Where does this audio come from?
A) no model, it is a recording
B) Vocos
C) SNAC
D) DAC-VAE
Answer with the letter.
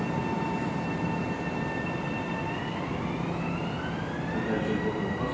A